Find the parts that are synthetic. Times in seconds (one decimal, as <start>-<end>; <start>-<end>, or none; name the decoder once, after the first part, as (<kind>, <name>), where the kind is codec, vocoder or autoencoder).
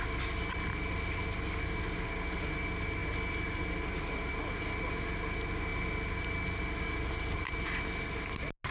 none